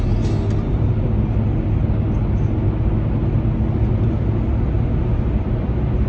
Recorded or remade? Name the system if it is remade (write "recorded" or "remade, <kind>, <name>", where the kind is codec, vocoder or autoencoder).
recorded